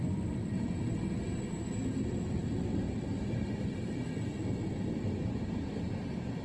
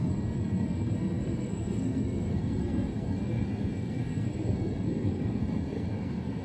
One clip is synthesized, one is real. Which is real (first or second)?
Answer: first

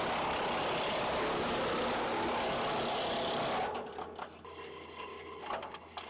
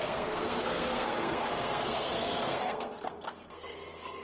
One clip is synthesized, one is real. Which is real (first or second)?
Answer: first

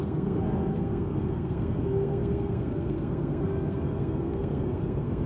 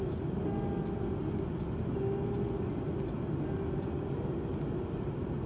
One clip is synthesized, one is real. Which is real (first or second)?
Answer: second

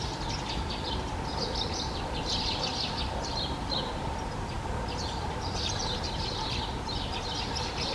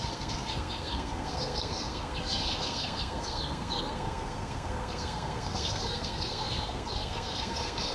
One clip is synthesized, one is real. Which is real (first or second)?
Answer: first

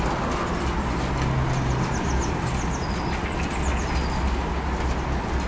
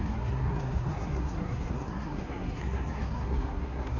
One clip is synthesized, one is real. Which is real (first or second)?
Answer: first